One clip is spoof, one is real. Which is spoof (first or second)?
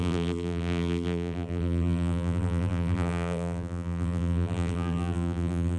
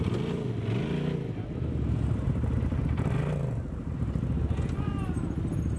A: first